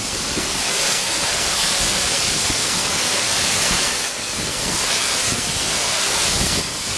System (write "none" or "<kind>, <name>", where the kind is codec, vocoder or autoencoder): codec, SNAC